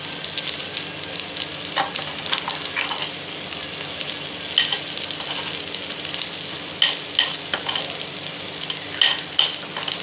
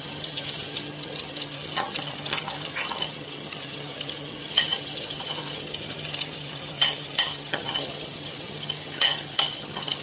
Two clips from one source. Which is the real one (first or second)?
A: first